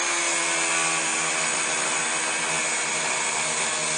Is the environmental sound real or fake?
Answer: real